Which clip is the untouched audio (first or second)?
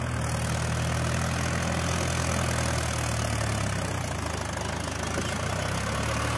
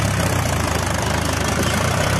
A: first